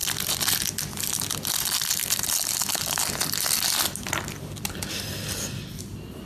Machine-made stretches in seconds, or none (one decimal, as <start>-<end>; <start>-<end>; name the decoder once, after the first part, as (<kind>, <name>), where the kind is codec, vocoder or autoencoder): 0.0-0.6 (vocoder, BigVGAN v2); 2.0-5.8